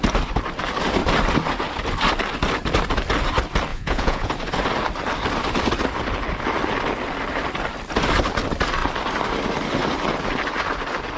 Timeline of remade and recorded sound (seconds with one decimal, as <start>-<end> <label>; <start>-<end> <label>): 0.0-3.7 recorded; 3.7-4.3 remade; 4.3-11.2 recorded